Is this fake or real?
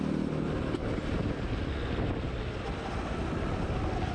real